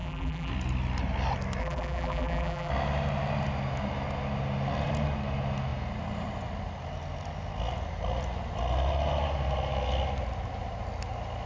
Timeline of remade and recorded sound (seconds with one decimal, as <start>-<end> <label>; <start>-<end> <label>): 0.0-0.5 remade; 0.5-1.6 recorded; 1.6-2.7 remade; 2.7-11.5 recorded